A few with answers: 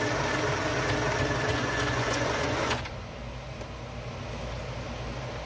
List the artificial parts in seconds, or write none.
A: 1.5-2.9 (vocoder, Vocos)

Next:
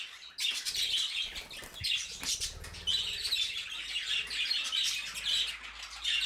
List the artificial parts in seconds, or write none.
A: none

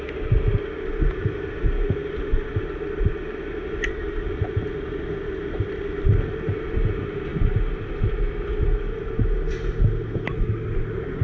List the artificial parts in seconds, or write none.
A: none

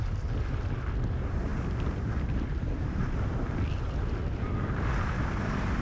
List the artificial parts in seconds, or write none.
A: none